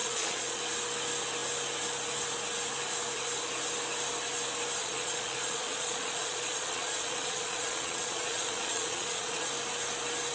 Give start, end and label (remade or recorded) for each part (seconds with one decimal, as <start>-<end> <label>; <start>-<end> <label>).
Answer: 0.0-0.6 remade; 0.6-4.8 recorded; 4.8-9.5 remade; 9.5-10.3 recorded